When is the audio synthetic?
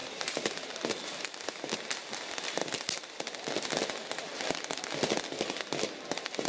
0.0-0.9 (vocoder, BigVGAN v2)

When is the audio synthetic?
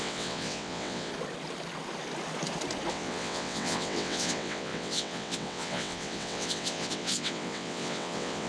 0.0-1.1 (vocoder, WaveNeXt); 2.9-8.5